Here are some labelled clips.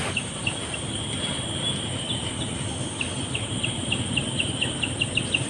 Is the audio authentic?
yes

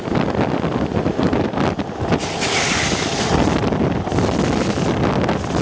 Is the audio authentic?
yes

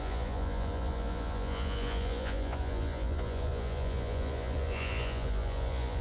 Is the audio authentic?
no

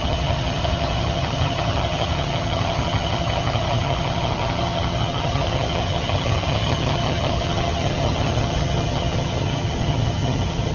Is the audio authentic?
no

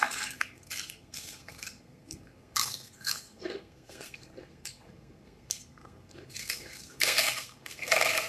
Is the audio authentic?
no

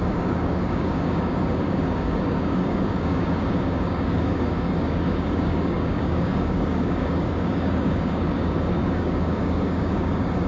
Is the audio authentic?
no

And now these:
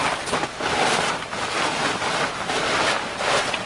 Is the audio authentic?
yes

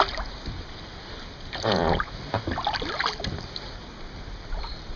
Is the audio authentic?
yes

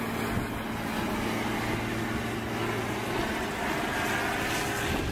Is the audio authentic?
yes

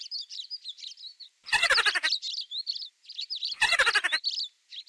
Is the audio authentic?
no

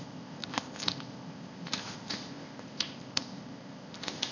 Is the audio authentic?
no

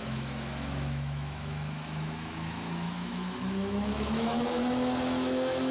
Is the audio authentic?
no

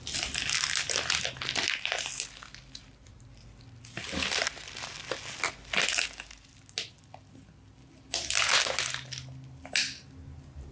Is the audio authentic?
yes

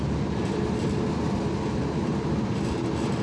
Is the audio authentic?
yes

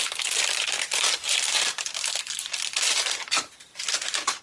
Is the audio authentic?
no